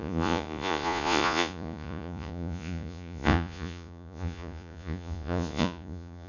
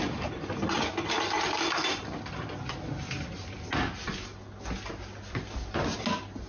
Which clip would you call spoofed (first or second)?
first